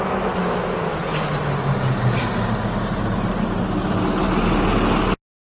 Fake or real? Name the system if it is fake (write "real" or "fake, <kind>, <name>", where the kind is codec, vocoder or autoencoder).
real